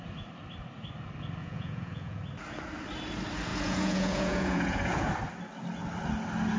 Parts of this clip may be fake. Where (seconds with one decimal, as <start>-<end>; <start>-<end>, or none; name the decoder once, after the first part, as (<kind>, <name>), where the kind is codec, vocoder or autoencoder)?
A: 1.4-2.2 (vocoder, Vocos); 3.5-5.1